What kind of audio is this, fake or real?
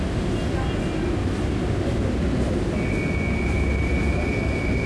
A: real